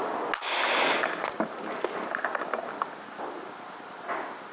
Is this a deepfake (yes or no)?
no